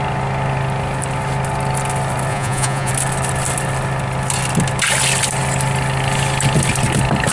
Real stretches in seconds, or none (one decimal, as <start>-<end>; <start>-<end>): 0.0-2.3; 2.9-7.3